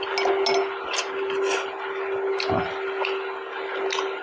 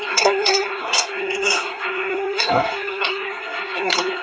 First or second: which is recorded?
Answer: first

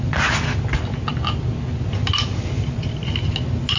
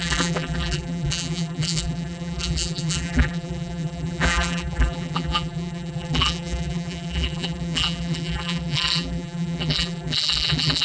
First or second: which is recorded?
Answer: first